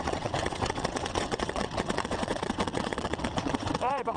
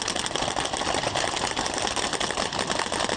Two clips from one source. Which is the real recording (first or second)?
second